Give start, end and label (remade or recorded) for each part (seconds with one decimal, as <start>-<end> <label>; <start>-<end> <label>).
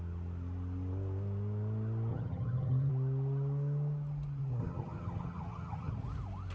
0.0-2.1 recorded; 2.1-2.9 remade; 2.9-4.6 recorded; 4.6-5.9 remade; 5.9-6.5 recorded